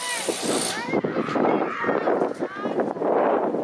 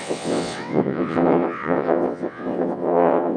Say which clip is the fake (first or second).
second